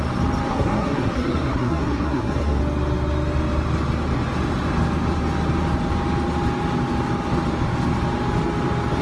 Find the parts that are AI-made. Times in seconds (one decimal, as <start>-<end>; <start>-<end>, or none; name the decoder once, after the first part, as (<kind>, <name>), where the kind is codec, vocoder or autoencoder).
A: 0.5-2.6 (codec, SNAC)